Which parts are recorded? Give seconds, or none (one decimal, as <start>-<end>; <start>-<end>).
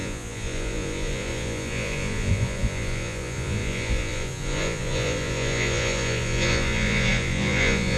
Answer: none